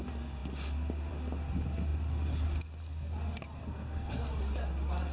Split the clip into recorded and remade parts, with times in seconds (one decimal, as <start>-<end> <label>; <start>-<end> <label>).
0.0-3.6 recorded; 3.6-4.1 remade; 4.1-5.1 recorded